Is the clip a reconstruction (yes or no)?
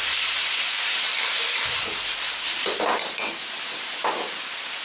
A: yes